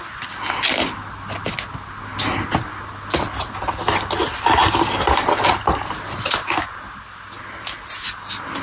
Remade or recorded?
recorded